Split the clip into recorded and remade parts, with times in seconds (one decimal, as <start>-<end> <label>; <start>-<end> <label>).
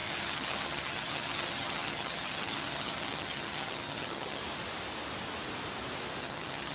0.0-4.4 remade; 4.4-6.2 recorded; 6.2-6.7 remade